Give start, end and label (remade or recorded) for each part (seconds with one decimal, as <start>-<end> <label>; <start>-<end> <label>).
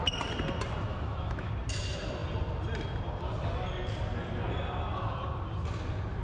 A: 0.0-0.9 recorded; 0.9-1.5 remade; 1.5-6.2 recorded